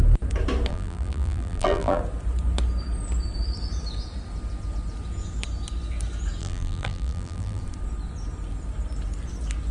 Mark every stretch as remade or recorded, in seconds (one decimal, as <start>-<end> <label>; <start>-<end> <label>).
0.0-0.7 recorded; 0.7-2.0 remade; 2.0-6.4 recorded; 6.4-7.6 remade; 7.6-9.7 recorded